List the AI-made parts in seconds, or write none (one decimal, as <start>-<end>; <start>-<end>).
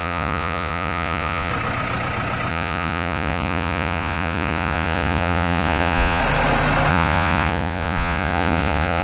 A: 0.0-1.5; 2.5-6.2; 6.9-9.0